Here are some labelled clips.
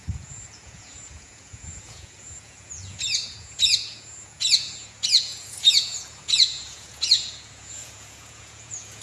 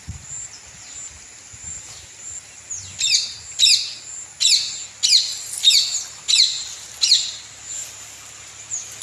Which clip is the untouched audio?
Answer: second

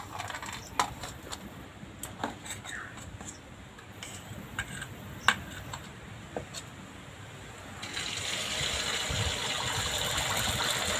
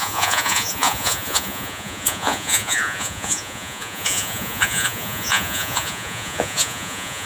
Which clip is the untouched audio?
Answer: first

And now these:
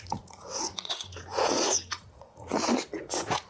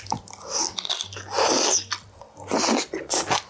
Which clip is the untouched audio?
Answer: second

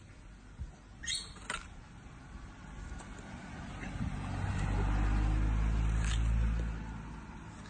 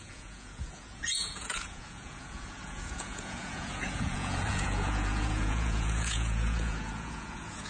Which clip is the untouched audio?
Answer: first